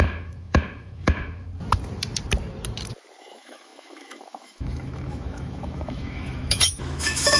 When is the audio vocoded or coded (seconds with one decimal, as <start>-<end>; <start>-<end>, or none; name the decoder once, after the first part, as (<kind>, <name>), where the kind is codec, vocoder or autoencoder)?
0.0-1.5 (autoencoder, DAC-VAE); 3.2-7.4